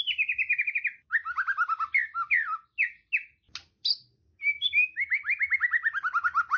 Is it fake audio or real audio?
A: real